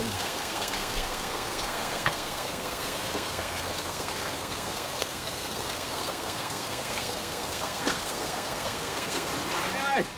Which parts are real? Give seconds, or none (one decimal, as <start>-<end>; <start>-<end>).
9.3-10.2